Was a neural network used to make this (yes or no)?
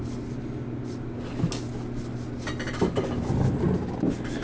no